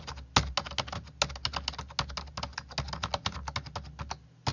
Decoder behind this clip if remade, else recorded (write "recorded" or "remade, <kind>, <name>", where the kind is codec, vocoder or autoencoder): recorded